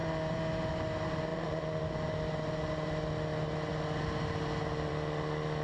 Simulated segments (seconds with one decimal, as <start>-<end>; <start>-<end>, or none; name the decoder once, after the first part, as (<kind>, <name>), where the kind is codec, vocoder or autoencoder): none